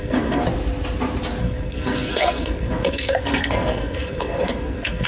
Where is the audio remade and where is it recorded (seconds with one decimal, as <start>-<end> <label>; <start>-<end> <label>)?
0.0-0.4 remade; 0.4-1.4 recorded; 1.4-5.1 remade